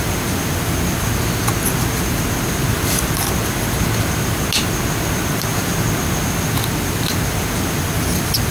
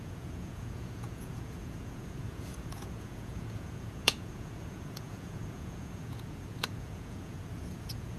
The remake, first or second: second